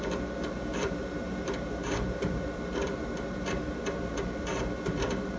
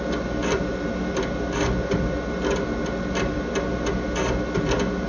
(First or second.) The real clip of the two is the second